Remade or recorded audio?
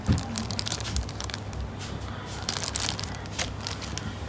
recorded